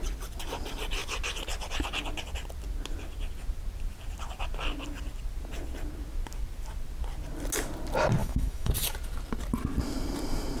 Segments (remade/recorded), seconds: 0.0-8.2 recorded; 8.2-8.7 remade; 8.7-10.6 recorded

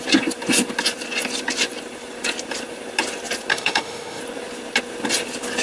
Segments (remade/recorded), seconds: 0.0-3.5 recorded; 3.5-4.2 remade; 4.2-5.6 recorded

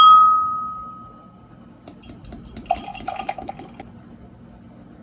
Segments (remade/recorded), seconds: 0.0-2.9 recorded; 2.9-3.5 remade; 3.5-5.0 recorded

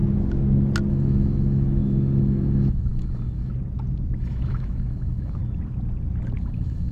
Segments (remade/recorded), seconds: 0.0-0.9 recorded; 0.9-3.5 remade; 3.5-4.2 recorded; 4.2-5.4 remade; 5.4-6.4 recorded; 6.4-6.9 remade

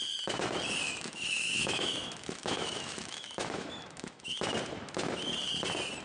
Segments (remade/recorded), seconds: 0.0-0.8 recorded; 0.8-4.4 remade; 4.4-6.0 recorded

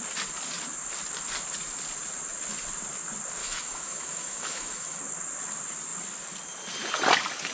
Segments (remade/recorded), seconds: 0.0-3.4 recorded; 3.4-5.0 remade; 5.0-7.5 recorded